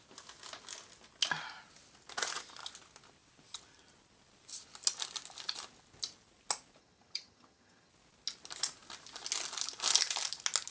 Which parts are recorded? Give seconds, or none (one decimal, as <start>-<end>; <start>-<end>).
0.0-6.8; 7.9-10.7